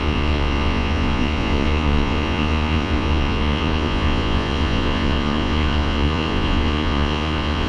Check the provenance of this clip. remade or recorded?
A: remade